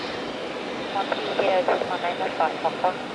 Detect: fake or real real